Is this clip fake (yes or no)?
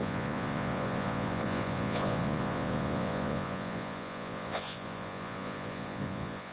yes